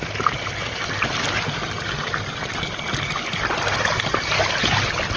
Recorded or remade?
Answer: recorded